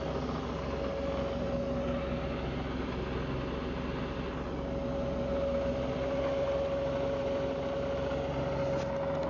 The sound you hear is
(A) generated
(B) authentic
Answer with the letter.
B